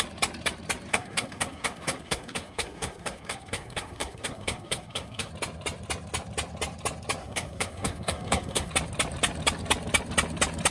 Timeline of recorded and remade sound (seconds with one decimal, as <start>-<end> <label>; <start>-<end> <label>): 0.0-0.9 recorded; 0.9-5.3 remade; 5.3-7.2 recorded; 7.2-8.7 remade; 8.7-10.7 recorded